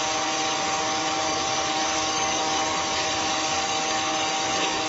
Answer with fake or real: fake